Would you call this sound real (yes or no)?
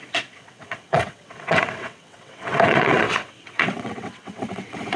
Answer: no